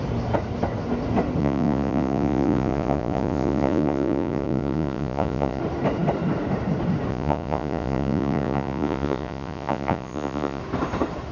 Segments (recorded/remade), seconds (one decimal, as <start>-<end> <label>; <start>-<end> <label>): 0.0-1.4 recorded; 1.4-5.6 remade; 5.6-7.1 recorded; 7.1-10.6 remade; 10.6-11.3 recorded